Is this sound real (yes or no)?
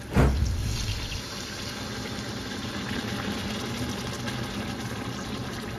yes